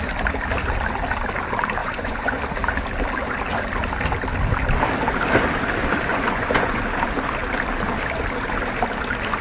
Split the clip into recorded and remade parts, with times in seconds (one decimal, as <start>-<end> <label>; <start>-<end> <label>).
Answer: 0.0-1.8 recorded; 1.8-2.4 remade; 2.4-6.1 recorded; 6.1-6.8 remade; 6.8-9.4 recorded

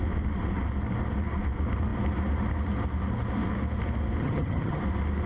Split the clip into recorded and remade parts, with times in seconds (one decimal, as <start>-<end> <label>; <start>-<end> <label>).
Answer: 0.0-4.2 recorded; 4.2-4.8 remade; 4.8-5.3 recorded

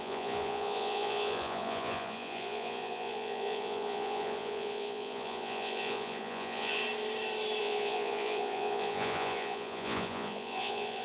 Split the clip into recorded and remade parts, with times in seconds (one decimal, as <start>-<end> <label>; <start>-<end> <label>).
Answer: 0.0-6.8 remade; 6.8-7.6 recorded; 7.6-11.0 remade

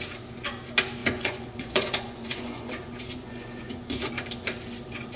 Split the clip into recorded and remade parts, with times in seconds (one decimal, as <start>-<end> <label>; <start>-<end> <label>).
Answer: 0.0-1.0 recorded; 1.0-4.1 remade; 4.1-5.2 recorded